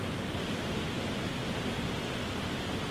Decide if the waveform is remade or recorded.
recorded